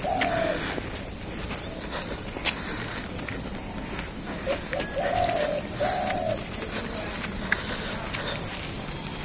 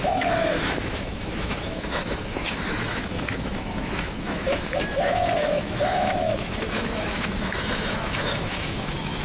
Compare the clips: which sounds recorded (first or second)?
first